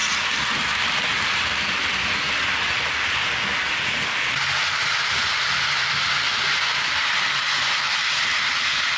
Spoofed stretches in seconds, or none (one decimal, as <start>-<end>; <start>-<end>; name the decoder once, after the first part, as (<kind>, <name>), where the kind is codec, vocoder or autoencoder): 0.0-5.1 (vocoder, BigVGAN v2)